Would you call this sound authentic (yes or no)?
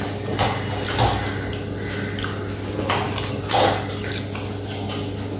yes